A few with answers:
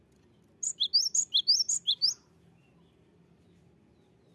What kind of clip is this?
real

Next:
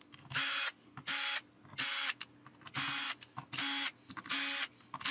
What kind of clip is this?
real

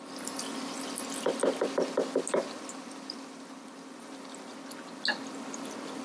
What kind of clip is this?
real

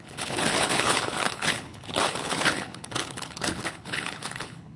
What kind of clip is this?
fake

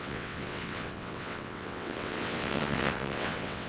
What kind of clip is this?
fake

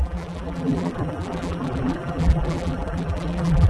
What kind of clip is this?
fake